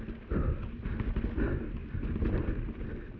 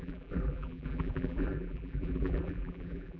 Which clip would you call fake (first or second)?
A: second